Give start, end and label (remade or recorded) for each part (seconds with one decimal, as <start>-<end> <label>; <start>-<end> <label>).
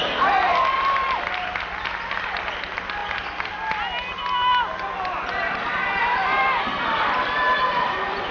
0.0-8.3 recorded